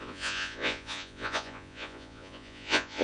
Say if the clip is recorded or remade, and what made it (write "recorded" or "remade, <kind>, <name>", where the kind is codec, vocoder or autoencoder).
remade, vocoder, Vocos